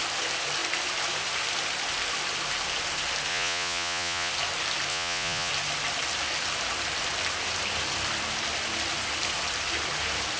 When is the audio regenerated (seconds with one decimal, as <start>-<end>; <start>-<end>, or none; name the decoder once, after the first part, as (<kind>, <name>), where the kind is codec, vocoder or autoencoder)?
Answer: 3.3-4.3 (vocoder, Vocos); 4.9-5.5

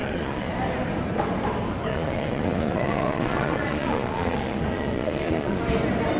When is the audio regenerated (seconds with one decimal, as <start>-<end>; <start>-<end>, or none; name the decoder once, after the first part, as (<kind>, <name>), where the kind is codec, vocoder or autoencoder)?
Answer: 0.0-0.5 (vocoder, Vocos); 1.9-5.6

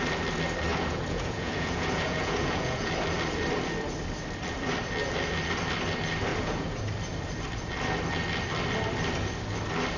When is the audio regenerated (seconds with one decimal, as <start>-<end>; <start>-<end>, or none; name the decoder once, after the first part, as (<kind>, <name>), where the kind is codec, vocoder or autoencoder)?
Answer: 0.7-2.9 (vocoder, Vocos); 6.3-6.8

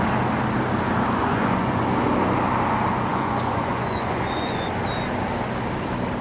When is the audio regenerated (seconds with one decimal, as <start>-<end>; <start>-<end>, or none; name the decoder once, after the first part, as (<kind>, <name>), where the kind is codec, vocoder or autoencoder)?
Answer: 1.2-1.8 (vocoder, Vocos); 3.1-4.7

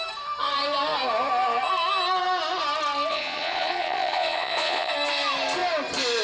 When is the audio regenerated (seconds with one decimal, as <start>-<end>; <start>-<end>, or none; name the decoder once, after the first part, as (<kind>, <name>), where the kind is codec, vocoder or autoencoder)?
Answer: 3.1-4.9 (vocoder, Vocos)

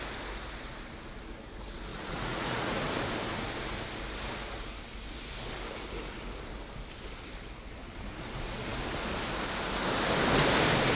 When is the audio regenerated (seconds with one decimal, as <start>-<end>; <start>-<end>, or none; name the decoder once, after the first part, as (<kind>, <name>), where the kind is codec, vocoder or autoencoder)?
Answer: 1.9-2.8 (vocoder, Vocos)